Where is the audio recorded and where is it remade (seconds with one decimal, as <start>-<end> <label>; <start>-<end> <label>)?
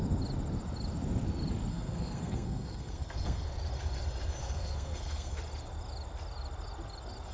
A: 0.0-1.7 recorded; 1.7-3.5 remade; 3.5-4.4 recorded; 4.4-5.3 remade; 5.3-7.3 recorded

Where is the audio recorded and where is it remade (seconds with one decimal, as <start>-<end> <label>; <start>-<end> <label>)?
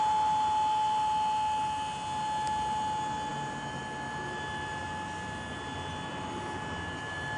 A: 0.0-7.4 recorded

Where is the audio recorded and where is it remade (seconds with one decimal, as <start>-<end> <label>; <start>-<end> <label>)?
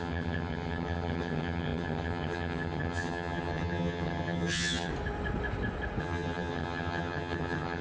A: 0.0-4.9 remade; 4.9-6.0 recorded; 6.0-7.8 remade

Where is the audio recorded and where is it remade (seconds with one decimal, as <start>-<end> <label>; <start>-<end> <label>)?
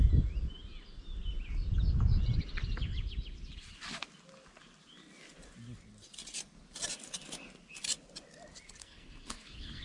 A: 0.0-8.8 recorded; 8.8-9.8 remade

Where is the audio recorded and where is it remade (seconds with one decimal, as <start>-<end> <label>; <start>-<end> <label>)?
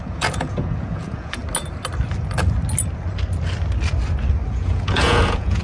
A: 0.0-1.4 remade; 1.4-4.5 recorded; 4.5-5.6 remade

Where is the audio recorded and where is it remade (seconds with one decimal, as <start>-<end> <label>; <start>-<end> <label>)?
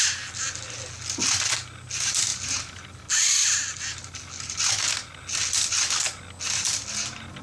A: 0.0-7.4 recorded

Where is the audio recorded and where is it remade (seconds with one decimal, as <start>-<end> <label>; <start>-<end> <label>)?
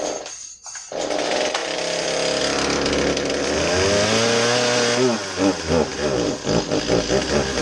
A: 0.0-7.6 recorded